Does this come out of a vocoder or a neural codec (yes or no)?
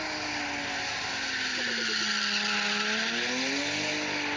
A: no